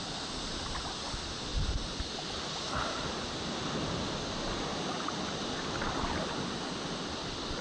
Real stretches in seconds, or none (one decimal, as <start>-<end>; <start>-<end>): 0.0-7.6